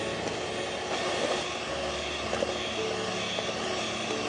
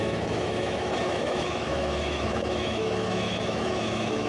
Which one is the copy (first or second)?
second